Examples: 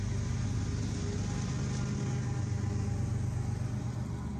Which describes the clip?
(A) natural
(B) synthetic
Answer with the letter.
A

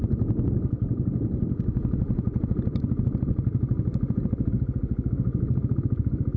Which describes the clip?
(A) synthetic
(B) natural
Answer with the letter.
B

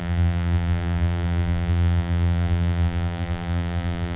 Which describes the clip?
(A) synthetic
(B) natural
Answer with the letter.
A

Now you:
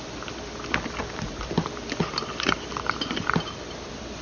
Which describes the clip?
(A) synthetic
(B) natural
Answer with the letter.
B